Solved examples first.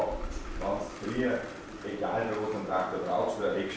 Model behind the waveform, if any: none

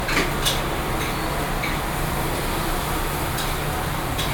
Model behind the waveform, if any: none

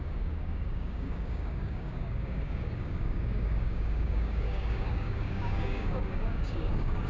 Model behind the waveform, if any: codec, DAC